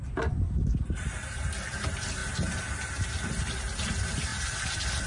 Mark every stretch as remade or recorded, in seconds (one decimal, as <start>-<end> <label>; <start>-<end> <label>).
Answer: 0.0-5.1 recorded